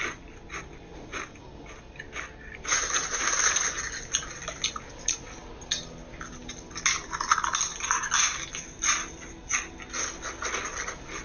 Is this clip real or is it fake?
real